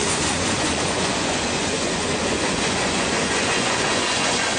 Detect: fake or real fake